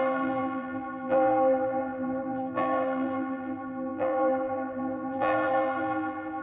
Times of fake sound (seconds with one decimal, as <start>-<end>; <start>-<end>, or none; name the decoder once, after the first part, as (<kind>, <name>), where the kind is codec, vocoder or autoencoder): 0.0-6.4 (vocoder, BigVGAN v2)